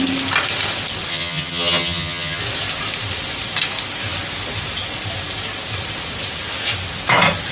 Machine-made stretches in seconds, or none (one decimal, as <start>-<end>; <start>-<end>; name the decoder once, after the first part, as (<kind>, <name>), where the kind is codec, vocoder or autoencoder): 1.1-2.4 (vocoder, HiFi-GAN)